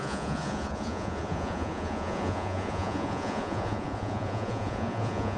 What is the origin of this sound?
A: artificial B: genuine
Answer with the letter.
A